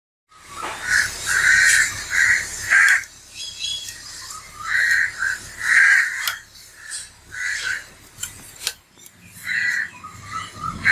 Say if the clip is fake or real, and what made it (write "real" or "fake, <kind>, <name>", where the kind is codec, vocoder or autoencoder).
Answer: fake, vocoder, BigVGAN v2